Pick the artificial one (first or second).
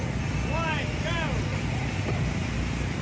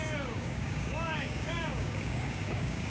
second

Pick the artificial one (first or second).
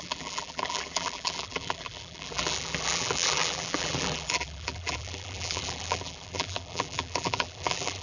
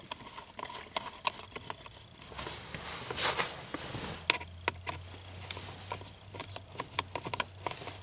first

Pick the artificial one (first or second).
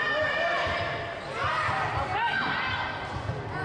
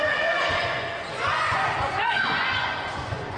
second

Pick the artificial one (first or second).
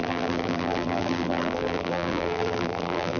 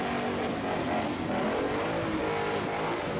first